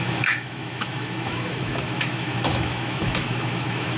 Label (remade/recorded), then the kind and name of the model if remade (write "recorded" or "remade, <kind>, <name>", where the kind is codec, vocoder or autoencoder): remade, autoencoder, DAC-VAE